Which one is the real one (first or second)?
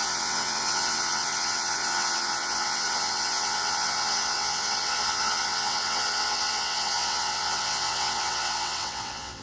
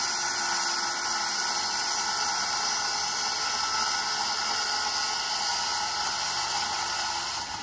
second